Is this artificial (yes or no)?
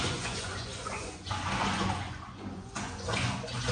yes